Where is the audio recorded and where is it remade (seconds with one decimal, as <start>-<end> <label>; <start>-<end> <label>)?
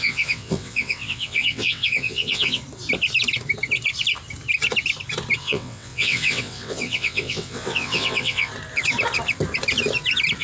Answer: 0.0-2.6 remade; 2.6-5.4 recorded; 5.4-8.5 remade; 8.5-10.4 recorded